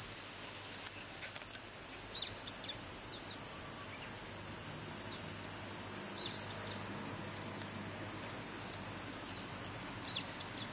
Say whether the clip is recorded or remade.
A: recorded